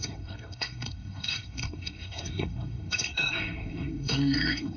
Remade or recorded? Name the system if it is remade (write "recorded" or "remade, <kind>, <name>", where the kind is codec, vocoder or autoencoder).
remade, codec, SNAC